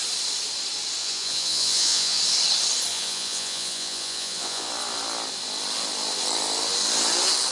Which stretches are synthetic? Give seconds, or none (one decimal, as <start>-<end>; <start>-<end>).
1.0-2.2; 2.9-4.7